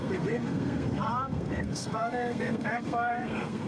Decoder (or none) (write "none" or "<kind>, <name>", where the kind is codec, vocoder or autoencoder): codec, SNAC